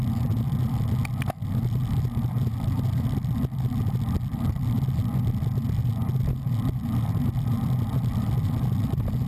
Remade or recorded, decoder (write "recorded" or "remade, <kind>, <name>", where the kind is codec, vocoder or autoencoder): recorded